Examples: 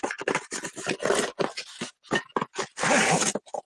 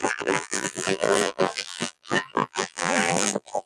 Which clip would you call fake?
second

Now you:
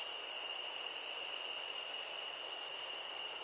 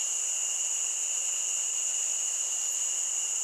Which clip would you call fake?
first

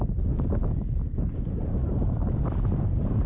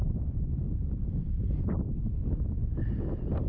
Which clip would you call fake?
second